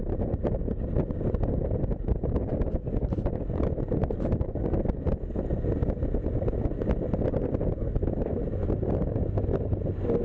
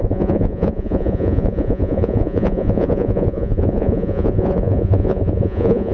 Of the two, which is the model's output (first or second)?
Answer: second